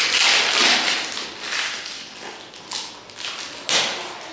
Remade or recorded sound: recorded